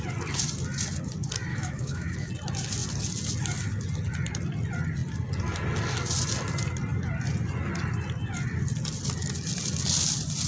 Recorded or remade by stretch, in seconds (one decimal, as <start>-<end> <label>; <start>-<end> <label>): 0.0-1.5 recorded; 1.5-2.3 remade; 2.3-10.5 recorded